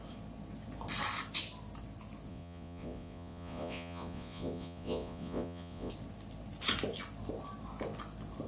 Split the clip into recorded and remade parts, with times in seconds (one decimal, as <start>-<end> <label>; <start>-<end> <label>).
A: 0.0-2.3 recorded; 2.3-5.9 remade; 5.9-8.5 recorded